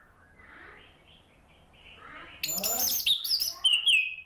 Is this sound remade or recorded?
recorded